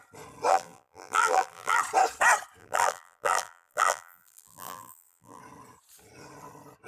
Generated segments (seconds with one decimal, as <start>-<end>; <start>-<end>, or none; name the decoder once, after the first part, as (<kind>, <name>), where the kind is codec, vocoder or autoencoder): 0.5-1.8 (vocoder, BigVGAN v2); 2.6-5.4